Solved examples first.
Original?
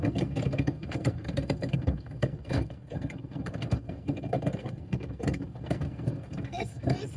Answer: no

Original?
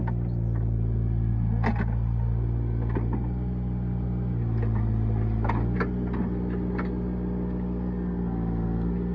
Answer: yes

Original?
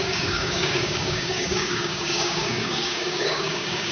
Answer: no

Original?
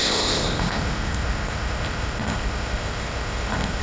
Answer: no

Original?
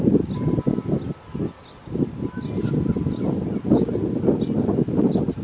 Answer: yes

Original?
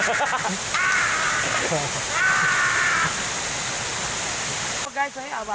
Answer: yes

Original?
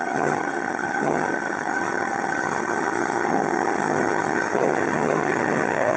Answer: no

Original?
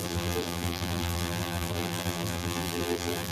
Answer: no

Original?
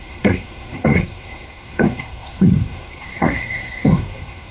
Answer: no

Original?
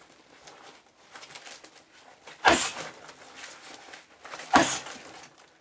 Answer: yes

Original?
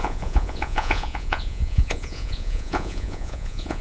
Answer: no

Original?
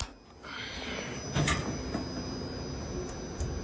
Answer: yes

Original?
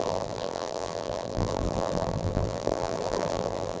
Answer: no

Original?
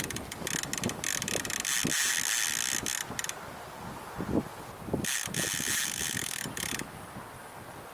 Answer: yes